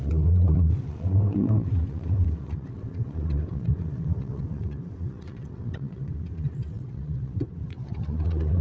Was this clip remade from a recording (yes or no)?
yes